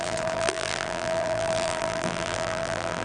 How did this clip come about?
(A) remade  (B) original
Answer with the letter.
A